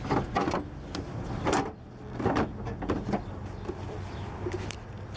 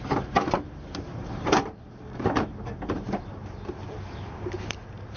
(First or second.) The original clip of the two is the first